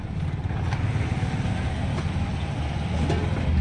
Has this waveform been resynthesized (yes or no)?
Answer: no